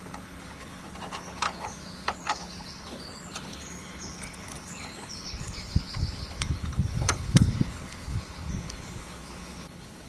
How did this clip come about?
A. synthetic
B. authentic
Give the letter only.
A